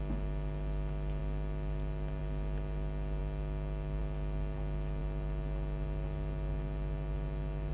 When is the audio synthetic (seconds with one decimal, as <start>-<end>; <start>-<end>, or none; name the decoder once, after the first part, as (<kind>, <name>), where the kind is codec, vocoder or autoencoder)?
none